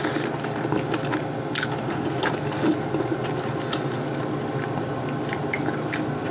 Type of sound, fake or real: real